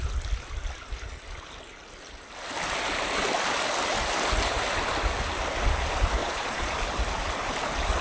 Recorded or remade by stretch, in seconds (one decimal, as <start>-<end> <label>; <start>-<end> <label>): 0.0-6.2 recorded; 6.2-6.7 remade; 6.7-8.0 recorded